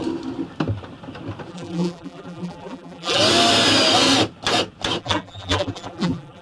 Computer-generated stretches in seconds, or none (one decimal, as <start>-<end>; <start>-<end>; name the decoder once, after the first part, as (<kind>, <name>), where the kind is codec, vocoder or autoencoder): 1.5-3.2 (vocoder, BigVGAN v2); 5.0-6.4